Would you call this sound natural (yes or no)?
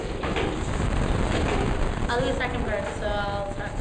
yes